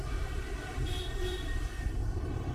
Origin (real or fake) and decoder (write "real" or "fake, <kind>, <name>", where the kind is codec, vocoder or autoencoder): real